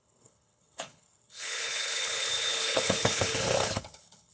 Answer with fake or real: fake